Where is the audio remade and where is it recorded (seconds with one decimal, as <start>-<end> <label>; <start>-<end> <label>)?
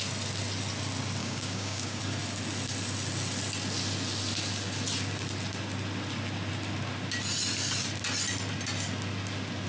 0.0-1.2 recorded; 1.2-2.0 remade; 2.0-9.7 recorded